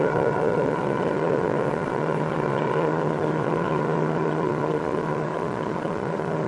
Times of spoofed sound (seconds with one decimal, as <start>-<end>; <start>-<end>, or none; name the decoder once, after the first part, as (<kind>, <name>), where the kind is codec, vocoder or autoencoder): 0.0-6.5 (vocoder, Vocos)